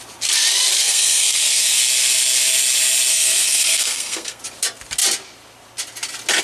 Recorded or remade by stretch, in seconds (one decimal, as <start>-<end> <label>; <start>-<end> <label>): 0.0-0.8 recorded; 0.8-1.8 remade; 1.8-3.1 recorded; 3.1-4.4 remade; 4.4-6.4 recorded